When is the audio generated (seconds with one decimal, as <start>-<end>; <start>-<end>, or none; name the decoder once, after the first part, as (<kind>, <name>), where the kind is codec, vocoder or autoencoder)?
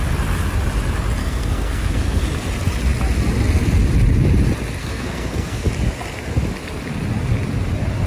1.2-2.2 (codec, SNAC); 4.8-5.7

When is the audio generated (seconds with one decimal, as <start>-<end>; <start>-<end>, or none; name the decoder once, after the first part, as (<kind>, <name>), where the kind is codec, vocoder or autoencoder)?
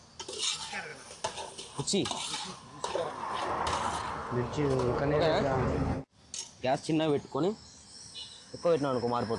none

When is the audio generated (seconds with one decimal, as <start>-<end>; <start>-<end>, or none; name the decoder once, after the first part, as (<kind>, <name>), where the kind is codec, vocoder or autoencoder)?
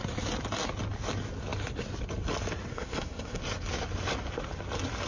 2.7-3.4 (codec, SNAC)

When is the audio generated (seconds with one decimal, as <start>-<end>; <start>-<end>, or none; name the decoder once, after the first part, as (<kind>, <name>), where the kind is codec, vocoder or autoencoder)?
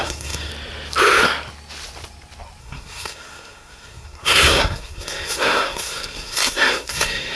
0.0-0.5 (codec, SNAC); 2.6-7.4